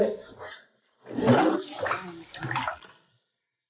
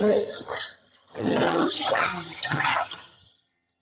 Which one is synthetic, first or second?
second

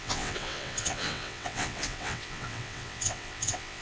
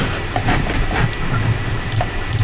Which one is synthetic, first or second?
first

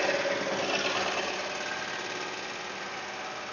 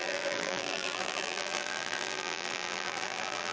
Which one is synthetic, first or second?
second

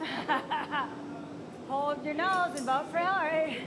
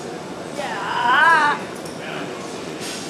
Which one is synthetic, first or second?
second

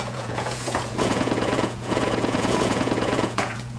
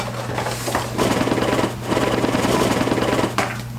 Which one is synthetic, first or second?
first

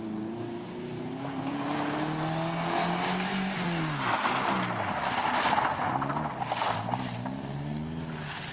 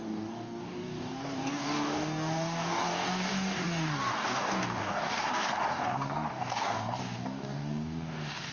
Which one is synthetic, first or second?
second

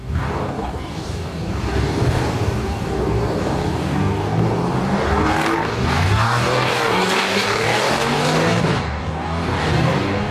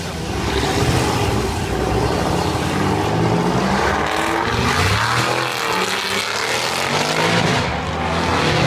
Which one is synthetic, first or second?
first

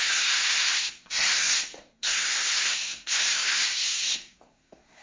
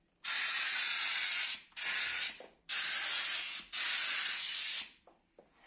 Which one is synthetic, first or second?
first